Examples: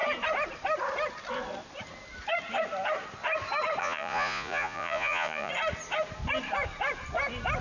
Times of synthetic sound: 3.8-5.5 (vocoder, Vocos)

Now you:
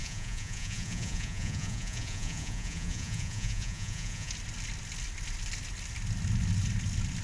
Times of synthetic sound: 0.0-4.3 (vocoder, Vocos)

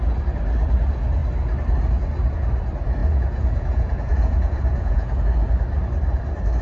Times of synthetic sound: 3.0-5.2 (vocoder, Vocos)

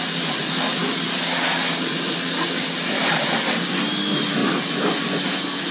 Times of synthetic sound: none

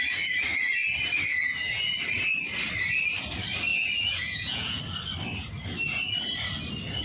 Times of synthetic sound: 1.3-1.9 (vocoder, Vocos); 3.7-4.8

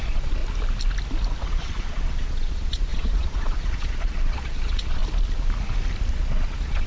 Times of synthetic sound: 0.0-0.4 (vocoder, Vocos); 1.4-5.0; 6.1-6.9

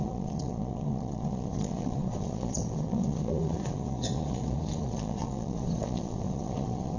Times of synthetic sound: 0.0-7.0 (vocoder, Vocos)